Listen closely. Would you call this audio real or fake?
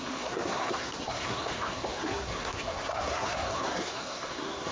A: fake